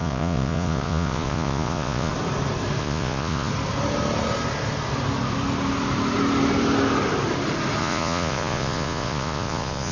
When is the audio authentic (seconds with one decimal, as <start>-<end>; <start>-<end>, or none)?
2.1-2.8; 3.5-7.8